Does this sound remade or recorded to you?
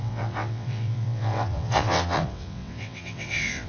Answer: remade